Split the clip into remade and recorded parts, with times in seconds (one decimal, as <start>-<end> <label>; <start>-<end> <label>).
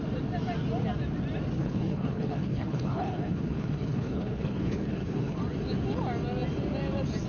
0.0-1.6 recorded; 1.6-5.4 remade; 5.4-7.3 recorded